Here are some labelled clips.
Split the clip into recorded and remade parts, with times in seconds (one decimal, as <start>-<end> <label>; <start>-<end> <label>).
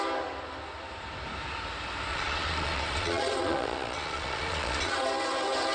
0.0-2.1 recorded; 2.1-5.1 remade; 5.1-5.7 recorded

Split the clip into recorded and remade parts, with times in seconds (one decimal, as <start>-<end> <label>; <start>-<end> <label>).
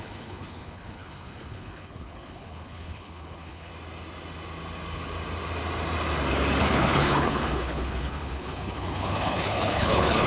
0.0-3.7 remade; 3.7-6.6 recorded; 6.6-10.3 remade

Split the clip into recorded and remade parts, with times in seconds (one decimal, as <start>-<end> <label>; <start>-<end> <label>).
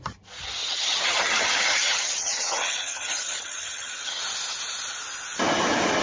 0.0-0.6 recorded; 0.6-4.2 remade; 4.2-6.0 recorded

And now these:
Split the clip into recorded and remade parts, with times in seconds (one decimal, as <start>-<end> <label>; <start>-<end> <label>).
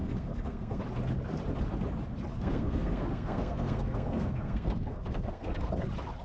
0.0-0.8 remade; 0.8-2.3 recorded; 2.3-5.7 remade; 5.7-6.2 recorded